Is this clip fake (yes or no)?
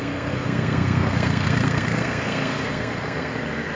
yes